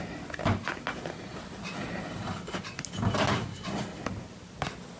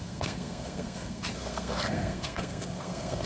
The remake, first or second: second